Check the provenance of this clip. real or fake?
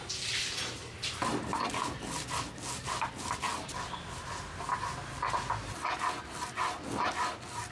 real